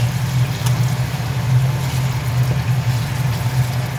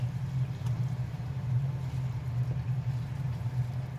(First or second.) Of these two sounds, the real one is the first